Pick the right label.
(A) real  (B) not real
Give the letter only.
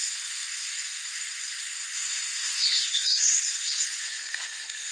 B